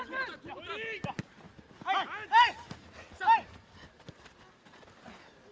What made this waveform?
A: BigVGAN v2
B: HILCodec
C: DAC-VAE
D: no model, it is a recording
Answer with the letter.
D